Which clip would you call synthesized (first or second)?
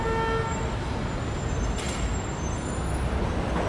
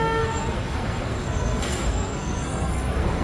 second